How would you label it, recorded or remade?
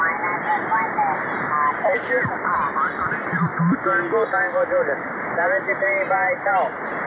recorded